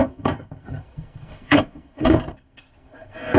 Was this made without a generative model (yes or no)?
no